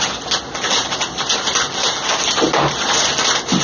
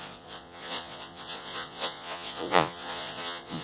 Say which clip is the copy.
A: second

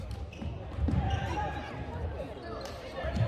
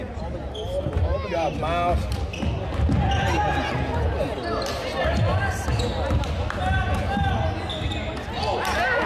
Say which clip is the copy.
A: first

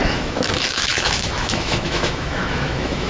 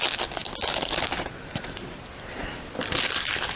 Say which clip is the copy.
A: first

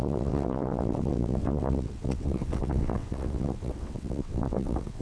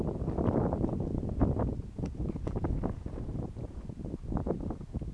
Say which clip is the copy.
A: first